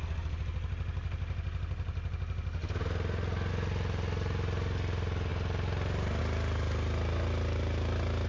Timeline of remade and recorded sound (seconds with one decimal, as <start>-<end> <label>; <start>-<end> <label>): 0.0-8.3 recorded